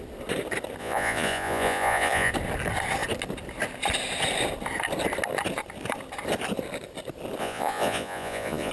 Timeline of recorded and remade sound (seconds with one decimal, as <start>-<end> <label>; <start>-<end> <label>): 0.0-0.8 recorded; 0.8-2.3 remade; 2.3-7.4 recorded; 7.4-8.7 remade